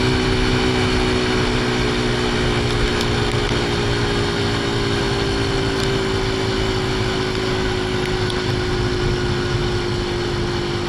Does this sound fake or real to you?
real